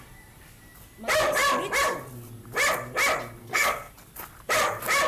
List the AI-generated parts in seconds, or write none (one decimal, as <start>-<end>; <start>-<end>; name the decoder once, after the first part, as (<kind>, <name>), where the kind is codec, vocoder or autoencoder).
3.4-3.9 (codec, SNAC)